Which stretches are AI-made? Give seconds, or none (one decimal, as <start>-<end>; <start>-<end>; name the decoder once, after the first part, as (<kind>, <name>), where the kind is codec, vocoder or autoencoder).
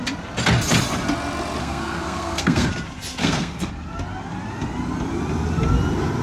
1.6-2.7 (codec, SNAC); 3.2-3.7